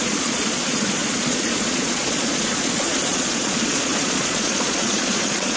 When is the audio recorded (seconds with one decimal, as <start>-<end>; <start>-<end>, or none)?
none